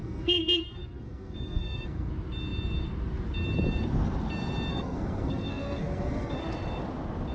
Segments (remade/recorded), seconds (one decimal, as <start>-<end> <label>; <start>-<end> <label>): 0.0-2.1 remade; 2.1-4.7 recorded; 4.7-6.4 remade; 6.4-7.3 recorded